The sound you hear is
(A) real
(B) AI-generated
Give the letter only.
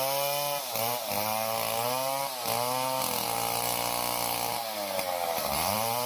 A